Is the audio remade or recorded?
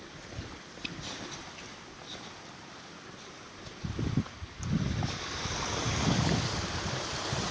recorded